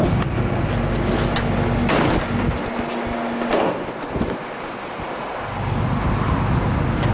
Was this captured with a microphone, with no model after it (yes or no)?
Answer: yes